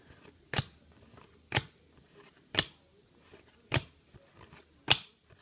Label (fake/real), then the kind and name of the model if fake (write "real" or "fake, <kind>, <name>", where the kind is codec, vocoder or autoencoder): real